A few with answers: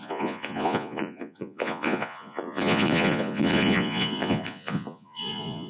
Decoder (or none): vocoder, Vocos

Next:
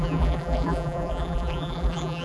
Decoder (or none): vocoder, BigVGAN v2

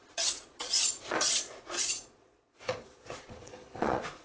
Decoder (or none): vocoder, Vocos